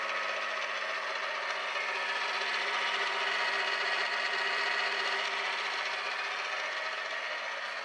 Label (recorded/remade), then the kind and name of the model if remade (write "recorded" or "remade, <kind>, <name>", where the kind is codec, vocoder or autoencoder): recorded